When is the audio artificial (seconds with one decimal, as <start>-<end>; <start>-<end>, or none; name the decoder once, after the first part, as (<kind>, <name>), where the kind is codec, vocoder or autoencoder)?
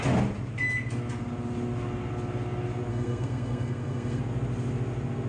2.9-4.2 (codec, SNAC)